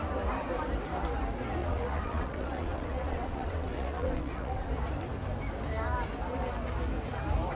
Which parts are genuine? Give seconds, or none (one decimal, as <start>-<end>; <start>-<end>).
0.0-1.6; 4.7-7.5

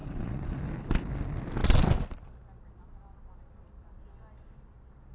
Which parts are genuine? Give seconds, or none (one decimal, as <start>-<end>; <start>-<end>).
0.6-5.1

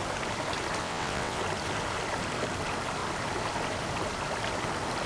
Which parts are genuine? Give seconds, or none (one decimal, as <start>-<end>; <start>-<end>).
0.0-0.8; 1.4-5.1

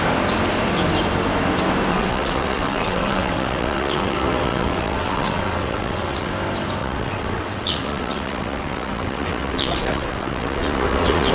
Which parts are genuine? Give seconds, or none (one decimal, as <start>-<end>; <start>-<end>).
0.0-1.9; 6.3-6.8

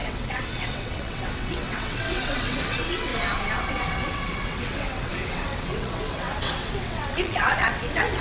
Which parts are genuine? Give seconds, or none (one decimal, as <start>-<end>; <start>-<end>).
3.1-3.7

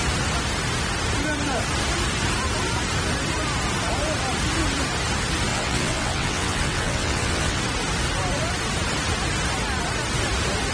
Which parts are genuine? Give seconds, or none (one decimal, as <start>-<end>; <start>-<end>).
0.0-5.5; 7.6-10.7

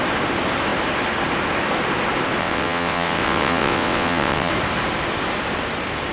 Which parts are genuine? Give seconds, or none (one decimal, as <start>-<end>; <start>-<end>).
0.0-2.4; 4.5-6.1

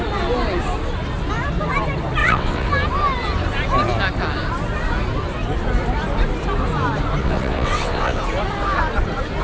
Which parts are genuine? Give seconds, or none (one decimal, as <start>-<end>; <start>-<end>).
0.0-2.2; 2.7-7.2; 8.2-9.4